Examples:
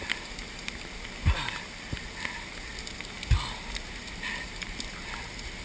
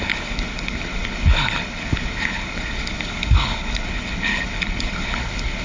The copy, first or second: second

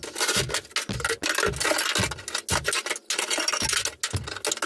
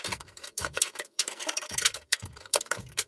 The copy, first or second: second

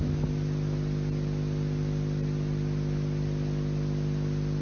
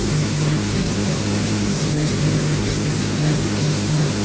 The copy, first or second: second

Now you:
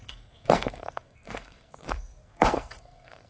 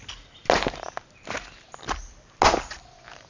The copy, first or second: first